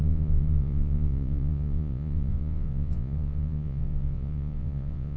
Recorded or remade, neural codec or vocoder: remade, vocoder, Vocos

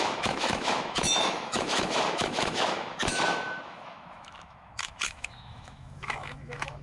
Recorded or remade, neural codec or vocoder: remade, autoencoder, DAC-VAE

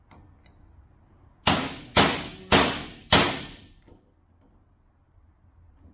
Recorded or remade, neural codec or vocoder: recorded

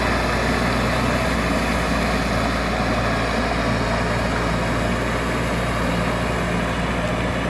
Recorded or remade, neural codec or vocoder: recorded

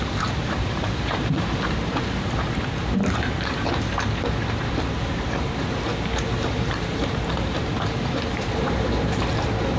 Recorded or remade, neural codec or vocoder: remade, vocoder, BigVGAN v2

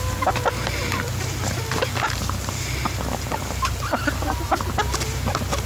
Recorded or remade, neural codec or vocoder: recorded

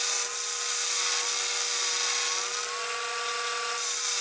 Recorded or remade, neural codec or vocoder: recorded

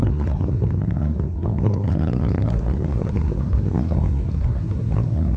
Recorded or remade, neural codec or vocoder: remade, codec, SNAC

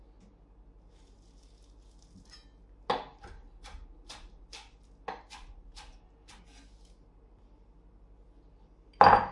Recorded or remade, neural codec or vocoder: recorded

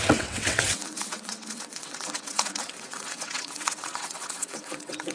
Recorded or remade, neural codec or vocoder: remade, vocoder, WaveNeXt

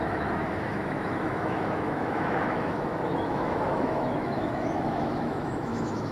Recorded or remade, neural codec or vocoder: remade, autoencoder, DAC-VAE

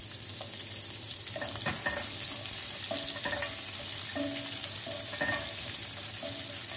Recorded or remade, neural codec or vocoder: recorded